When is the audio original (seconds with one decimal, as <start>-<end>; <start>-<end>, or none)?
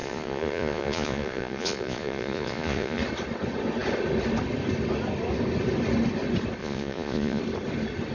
3.0-6.6; 7.4-8.1